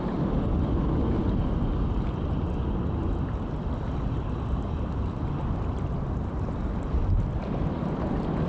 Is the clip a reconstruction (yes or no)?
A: no